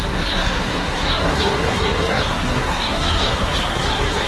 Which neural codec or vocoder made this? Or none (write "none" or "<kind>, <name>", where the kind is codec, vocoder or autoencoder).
codec, SNAC